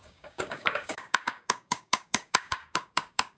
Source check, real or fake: fake